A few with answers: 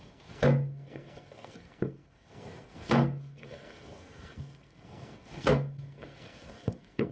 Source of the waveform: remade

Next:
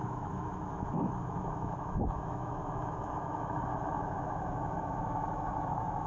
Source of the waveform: remade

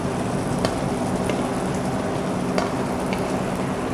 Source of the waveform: recorded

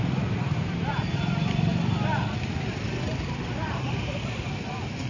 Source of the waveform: remade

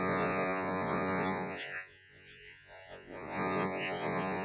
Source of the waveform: remade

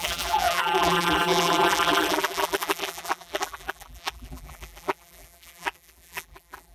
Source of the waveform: remade